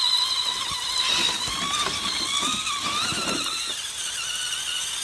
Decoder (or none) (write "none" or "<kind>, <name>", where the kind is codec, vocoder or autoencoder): none